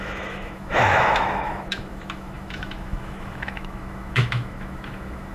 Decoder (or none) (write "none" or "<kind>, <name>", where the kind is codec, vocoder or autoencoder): autoencoder, DAC-VAE